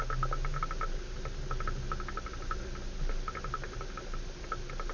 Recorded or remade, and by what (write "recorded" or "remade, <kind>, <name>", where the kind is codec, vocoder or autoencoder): recorded